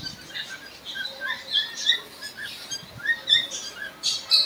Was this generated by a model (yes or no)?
no